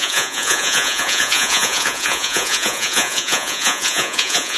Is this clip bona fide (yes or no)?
no